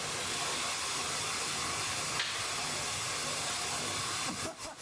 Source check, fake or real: real